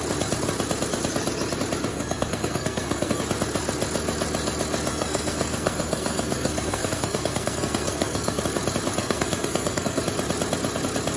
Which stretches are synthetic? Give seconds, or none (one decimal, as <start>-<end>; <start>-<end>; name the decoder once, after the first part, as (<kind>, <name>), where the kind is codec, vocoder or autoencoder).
1.9-3.2 (codec, SNAC); 4.9-8.4; 9.0-10.0